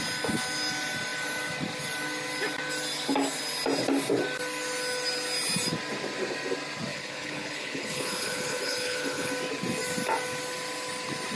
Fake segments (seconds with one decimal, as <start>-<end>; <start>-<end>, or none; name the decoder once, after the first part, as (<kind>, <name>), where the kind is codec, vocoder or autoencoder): 6.9-9.3 (codec, HILCodec)